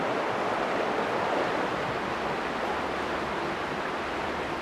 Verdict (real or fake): real